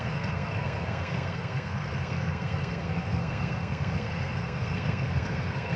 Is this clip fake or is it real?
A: fake